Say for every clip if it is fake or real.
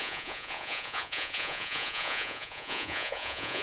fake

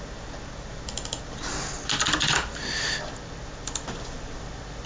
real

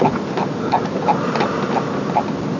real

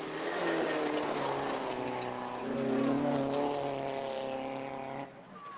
real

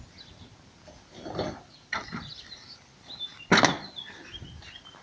real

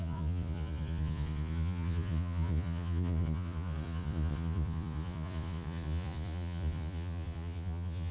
fake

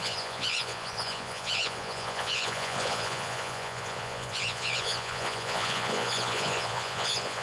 fake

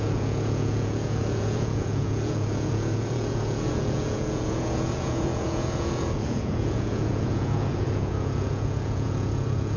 fake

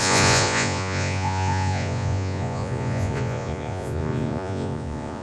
fake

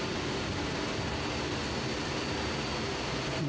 real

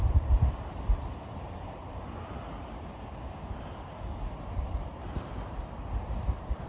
real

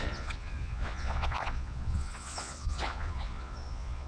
fake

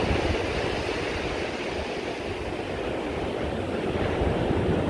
real